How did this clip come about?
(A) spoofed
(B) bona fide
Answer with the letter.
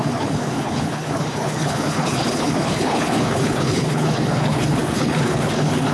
A